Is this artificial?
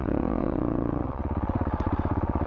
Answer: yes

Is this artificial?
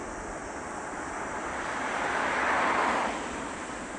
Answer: no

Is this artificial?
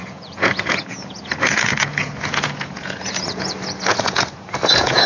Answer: yes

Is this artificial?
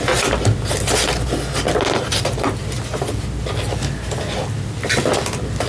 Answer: no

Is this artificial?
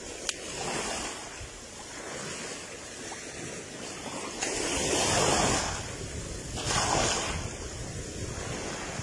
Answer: no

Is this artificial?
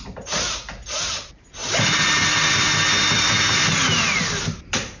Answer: no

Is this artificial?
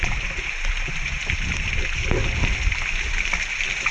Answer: no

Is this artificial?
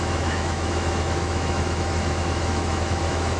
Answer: yes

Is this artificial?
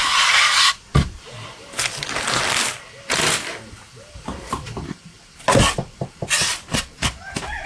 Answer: yes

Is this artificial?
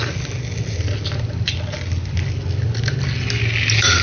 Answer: no